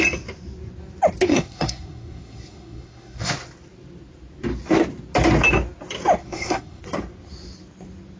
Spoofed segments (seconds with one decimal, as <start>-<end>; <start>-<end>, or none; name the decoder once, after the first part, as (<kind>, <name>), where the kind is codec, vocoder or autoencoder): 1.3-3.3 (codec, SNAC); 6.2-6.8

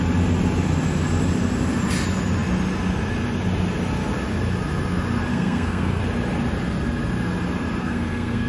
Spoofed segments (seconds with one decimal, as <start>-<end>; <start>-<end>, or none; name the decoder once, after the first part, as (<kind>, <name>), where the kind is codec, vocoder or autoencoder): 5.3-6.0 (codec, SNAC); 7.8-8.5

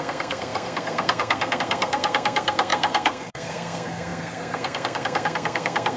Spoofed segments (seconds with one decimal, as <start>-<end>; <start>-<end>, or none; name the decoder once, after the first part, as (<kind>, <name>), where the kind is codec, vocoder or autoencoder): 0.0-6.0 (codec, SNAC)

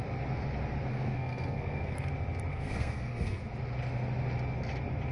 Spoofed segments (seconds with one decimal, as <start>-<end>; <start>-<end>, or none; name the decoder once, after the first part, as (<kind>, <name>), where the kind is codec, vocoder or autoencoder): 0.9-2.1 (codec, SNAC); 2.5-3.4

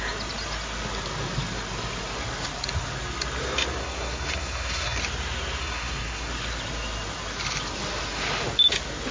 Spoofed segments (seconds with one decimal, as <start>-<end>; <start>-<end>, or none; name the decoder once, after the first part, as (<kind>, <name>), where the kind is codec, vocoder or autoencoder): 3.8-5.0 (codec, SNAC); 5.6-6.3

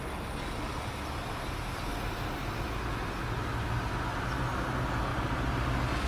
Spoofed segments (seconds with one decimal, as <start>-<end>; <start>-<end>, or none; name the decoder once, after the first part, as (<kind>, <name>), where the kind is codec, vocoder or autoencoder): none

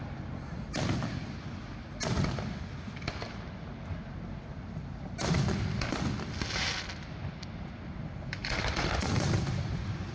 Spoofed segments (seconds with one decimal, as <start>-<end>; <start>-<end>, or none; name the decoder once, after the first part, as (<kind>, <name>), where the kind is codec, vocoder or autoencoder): none

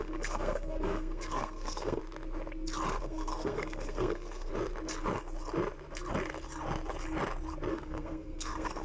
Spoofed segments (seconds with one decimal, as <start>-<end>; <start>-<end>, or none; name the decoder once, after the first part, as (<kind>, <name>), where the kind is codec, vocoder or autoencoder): 0.0-2.0 (codec, SNAC); 3.0-4.5; 7.7-8.8